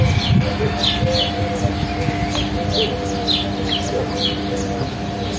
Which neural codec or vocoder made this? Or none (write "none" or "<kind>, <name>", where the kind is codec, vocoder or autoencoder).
none